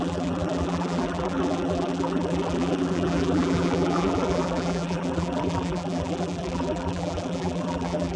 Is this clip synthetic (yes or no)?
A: yes